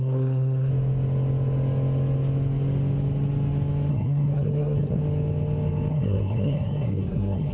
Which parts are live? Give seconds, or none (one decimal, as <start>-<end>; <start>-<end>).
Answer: 0.7-3.9; 5.0-5.9